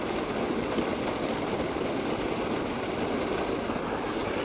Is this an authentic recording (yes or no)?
yes